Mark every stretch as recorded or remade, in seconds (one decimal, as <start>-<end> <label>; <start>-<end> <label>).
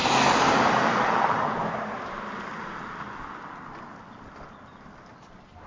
0.0-5.7 recorded